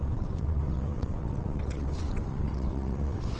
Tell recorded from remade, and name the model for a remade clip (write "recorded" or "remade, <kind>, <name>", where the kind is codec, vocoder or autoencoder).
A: remade, vocoder, WaveNeXt